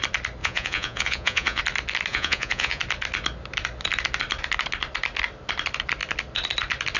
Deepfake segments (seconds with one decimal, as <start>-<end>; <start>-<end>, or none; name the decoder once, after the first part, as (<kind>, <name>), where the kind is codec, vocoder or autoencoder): 0.4-1.6 (vocoder, Vocos); 2.1-2.8